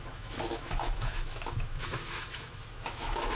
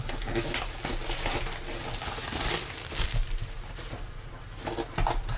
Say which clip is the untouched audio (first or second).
second